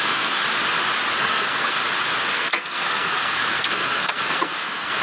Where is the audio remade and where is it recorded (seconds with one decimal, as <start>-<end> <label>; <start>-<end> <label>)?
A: 0.0-0.4 remade; 0.4-1.2 recorded; 1.2-1.8 remade; 1.8-2.3 recorded; 2.3-5.0 remade